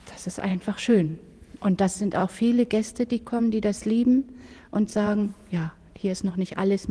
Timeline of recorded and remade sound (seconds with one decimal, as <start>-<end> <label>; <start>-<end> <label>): 0.0-0.5 recorded; 0.5-1.4 remade; 1.4-4.9 recorded; 4.9-6.3 remade; 6.3-6.9 recorded